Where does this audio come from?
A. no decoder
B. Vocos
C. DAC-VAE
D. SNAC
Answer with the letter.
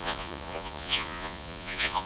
B